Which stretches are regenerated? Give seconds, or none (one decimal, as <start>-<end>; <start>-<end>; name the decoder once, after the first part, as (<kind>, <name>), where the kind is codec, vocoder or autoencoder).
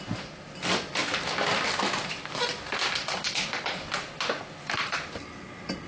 none